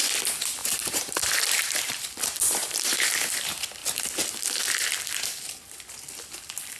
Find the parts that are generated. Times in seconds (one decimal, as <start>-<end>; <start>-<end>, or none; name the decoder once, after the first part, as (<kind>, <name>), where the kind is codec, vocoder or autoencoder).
0.6-2.0 (vocoder, BigVGAN v2); 2.6-3.3